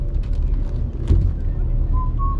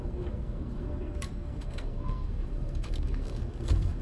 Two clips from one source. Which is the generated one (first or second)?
second